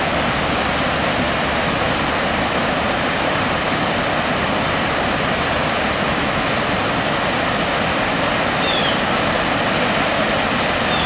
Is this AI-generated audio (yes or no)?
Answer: no